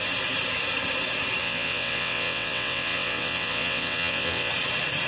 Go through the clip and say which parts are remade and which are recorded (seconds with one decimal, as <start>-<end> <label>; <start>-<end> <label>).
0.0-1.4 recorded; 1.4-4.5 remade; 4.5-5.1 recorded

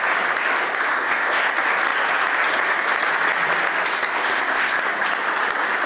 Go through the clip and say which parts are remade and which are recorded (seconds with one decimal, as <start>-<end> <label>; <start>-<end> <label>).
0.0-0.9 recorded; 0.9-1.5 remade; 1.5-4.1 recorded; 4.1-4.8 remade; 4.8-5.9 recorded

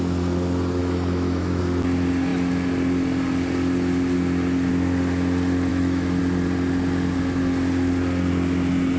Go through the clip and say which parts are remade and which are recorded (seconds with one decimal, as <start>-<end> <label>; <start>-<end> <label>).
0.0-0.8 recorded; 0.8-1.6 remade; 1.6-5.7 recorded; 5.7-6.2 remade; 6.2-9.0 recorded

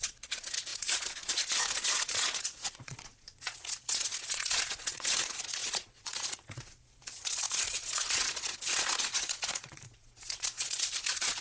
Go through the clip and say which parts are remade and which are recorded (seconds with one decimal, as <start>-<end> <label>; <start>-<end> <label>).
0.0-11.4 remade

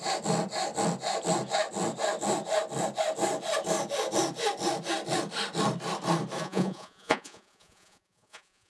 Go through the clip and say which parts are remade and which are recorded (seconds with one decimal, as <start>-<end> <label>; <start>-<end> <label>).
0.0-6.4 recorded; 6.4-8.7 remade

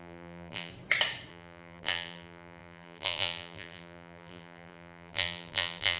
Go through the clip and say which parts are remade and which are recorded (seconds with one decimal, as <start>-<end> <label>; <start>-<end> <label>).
0.0-0.7 remade; 0.7-1.3 recorded; 1.3-6.0 remade

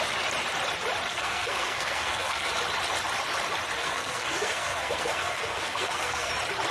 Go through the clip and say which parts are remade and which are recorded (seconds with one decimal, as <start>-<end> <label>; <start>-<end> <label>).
0.0-1.1 recorded; 1.1-2.5 remade; 2.5-3.8 recorded; 3.8-6.3 remade; 6.3-6.7 recorded

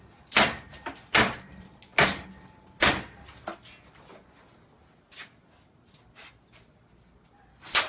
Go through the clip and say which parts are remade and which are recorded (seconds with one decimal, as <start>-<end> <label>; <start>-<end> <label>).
0.0-7.9 recorded